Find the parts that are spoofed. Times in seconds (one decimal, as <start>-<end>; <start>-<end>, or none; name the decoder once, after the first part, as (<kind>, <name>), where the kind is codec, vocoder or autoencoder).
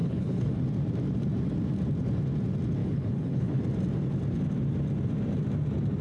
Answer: 0.0-0.6 (codec, HILCodec); 2.8-3.6